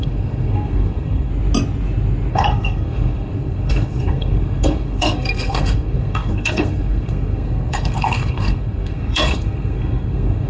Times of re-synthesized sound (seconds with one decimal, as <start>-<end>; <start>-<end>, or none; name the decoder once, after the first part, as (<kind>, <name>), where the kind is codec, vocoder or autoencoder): 0.0-1.3 (codec, SNAC); 2.3-10.5